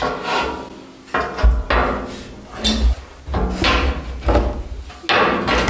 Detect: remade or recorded recorded